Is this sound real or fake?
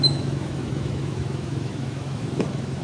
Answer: fake